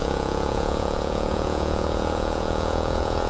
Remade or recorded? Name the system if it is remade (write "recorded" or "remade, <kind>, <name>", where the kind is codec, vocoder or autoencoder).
remade, vocoder, Vocos